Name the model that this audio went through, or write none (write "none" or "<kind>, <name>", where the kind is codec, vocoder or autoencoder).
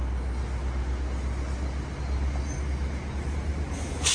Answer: none